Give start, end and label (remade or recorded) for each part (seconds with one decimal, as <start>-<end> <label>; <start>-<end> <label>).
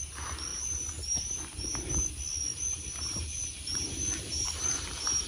0.0-0.5 recorded; 0.5-2.1 remade; 2.1-2.5 recorded; 2.5-5.3 remade